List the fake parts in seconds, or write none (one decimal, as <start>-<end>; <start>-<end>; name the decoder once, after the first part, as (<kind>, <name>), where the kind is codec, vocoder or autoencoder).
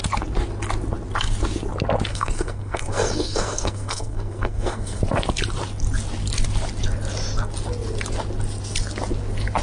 2.1-5.0 (codec, SNAC)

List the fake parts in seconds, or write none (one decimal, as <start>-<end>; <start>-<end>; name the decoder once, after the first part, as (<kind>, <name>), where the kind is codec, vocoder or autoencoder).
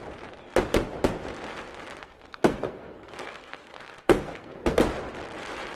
2.0-4.8 (codec, SNAC)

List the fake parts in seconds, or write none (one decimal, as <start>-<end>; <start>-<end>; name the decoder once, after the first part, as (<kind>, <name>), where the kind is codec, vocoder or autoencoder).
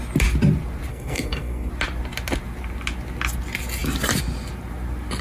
0.9-1.7 (codec, SNAC)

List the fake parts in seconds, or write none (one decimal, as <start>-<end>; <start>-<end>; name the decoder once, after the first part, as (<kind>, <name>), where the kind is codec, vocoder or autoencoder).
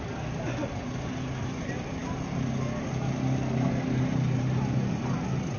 none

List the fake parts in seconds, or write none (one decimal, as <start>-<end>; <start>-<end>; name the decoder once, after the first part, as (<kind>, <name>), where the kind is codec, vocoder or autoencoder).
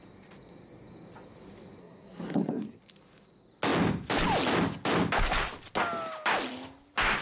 1.8-2.8 (codec, SNAC)